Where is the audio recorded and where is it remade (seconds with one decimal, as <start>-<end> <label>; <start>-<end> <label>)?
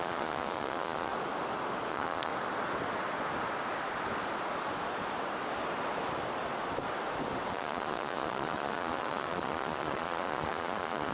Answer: 0.0-1.1 remade; 1.1-1.9 recorded; 1.9-2.3 remade; 2.3-7.5 recorded; 7.5-11.1 remade